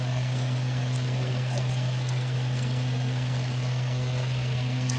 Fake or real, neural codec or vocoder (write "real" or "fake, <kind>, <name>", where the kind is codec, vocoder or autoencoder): fake, codec, SNAC